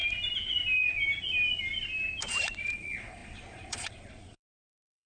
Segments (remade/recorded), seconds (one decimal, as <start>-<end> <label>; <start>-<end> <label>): 0.0-2.6 recorded; 2.6-5.1 remade